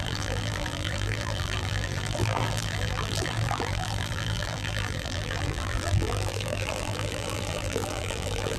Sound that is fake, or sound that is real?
fake